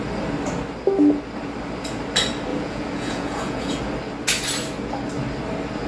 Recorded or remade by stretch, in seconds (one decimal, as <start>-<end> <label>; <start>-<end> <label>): 0.0-2.5 recorded; 2.5-3.8 remade; 3.8-5.9 recorded